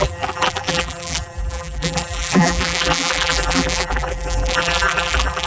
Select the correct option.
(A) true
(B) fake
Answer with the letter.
B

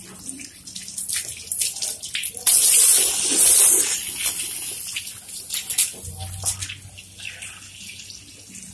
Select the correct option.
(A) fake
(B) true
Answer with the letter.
B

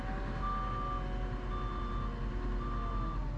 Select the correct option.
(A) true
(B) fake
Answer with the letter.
A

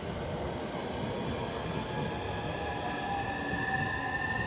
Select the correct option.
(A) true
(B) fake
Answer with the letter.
A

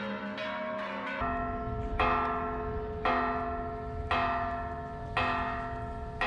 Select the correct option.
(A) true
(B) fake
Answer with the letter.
A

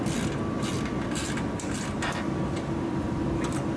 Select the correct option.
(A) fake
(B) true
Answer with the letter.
B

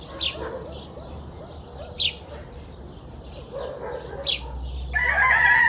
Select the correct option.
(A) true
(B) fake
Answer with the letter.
A